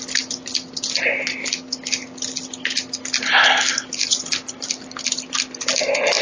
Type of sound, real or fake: real